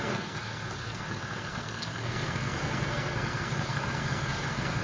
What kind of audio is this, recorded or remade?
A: remade